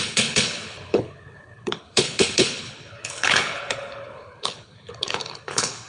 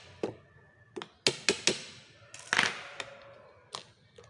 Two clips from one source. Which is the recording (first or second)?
second